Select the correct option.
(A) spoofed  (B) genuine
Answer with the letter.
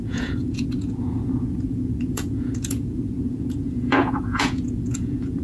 A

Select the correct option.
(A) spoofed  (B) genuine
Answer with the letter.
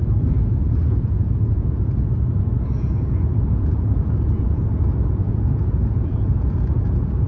A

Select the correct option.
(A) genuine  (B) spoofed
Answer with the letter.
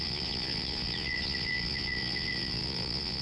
B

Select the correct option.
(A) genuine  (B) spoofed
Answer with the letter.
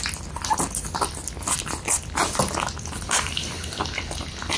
A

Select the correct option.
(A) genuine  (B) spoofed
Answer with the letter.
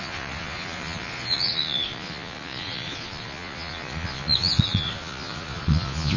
B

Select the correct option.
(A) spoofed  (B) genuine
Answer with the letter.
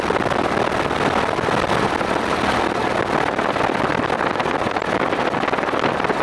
B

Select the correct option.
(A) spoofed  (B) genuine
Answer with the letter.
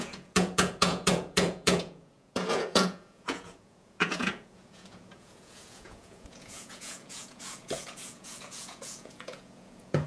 A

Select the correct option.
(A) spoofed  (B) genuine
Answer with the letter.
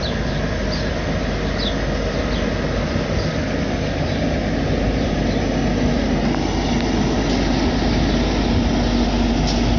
B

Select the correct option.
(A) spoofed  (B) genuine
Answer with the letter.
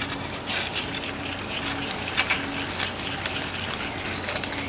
B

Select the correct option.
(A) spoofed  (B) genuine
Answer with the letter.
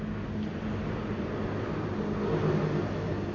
B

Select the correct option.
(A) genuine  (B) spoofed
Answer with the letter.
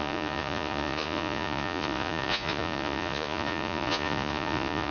B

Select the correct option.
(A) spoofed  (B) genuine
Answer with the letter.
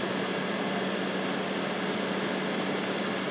B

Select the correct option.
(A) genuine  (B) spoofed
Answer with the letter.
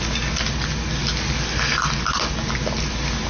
A